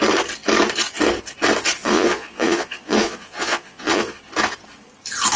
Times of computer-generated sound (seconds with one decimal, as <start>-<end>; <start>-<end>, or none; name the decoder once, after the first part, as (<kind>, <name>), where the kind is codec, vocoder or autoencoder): 1.8-4.2 (vocoder, Vocos)